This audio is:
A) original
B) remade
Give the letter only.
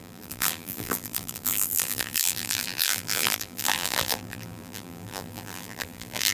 B